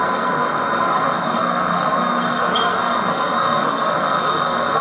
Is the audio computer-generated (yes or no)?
yes